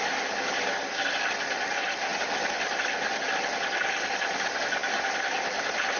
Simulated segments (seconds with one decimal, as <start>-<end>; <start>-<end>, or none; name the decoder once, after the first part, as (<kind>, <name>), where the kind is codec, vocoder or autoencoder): 2.1-2.9 (vocoder, BigVGAN v2); 4.8-5.5